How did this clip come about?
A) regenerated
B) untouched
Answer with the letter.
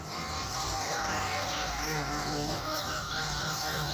A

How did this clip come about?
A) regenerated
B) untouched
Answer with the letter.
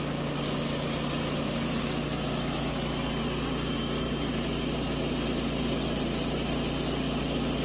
B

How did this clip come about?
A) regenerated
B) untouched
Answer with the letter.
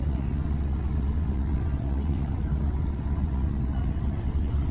A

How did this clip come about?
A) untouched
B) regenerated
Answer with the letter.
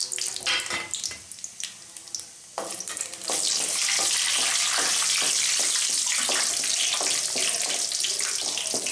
A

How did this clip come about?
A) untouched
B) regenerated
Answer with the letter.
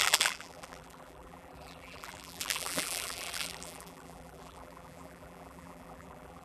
B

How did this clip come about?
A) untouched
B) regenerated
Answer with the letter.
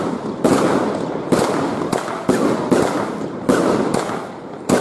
A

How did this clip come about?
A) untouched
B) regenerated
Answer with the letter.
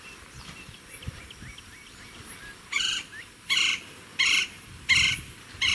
B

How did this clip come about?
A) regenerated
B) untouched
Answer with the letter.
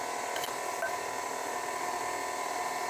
B